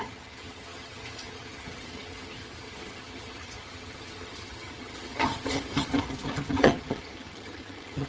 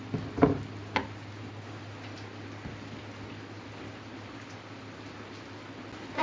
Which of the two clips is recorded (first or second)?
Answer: second